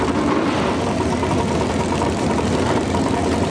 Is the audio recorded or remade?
recorded